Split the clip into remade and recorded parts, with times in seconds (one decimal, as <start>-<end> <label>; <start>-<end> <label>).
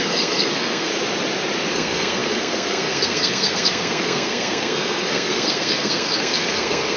0.0-0.9 remade; 0.9-1.7 recorded; 1.7-7.0 remade